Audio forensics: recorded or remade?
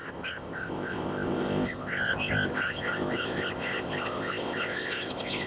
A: remade